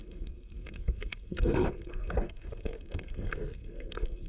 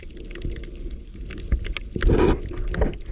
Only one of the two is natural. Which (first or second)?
second